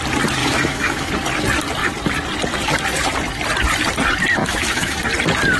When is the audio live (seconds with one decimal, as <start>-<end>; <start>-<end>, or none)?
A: 0.0-0.4; 1.1-4.4; 5.0-5.6